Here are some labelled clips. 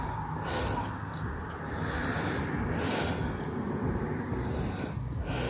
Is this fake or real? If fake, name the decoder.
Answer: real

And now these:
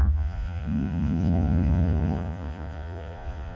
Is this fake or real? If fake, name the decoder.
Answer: fake, vocoder, Vocos